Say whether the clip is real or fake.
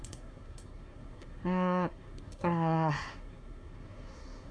fake